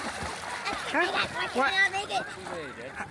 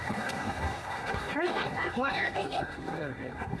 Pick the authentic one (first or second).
first